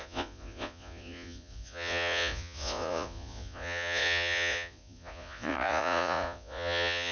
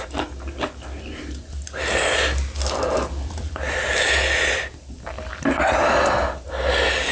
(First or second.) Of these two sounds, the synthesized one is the first